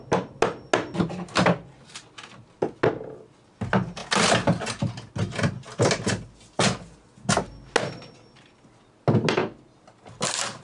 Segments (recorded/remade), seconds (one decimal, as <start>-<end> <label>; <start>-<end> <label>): 0.0-10.6 recorded